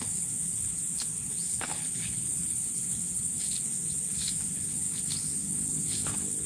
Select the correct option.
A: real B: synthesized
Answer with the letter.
B